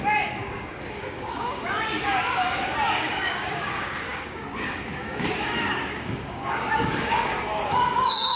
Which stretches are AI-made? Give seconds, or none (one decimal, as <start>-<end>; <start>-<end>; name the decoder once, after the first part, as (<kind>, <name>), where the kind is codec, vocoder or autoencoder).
0.0-8.4 (codec, DAC)